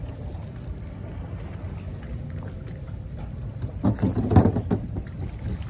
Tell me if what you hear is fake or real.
real